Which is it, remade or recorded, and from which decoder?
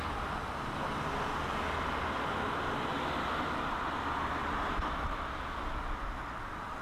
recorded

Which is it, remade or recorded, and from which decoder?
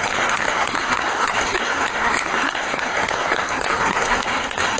remade, codec, SNAC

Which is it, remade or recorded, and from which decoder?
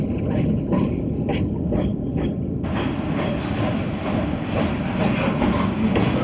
recorded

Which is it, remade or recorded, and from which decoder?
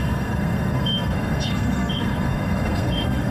remade, codec, SNAC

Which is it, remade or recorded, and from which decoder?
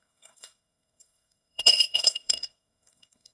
remade, codec, SNAC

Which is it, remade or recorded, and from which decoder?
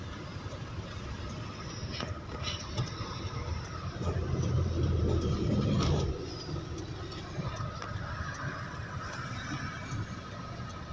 recorded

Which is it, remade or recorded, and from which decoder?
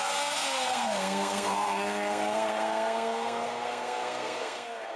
remade, codec, SNAC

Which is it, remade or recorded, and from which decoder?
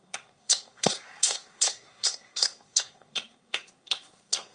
remade, codec, SNAC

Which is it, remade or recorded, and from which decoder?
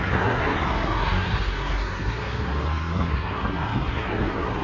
remade, codec, SNAC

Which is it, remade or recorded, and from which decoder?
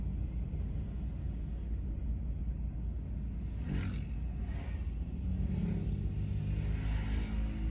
recorded